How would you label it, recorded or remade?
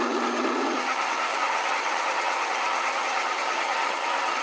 remade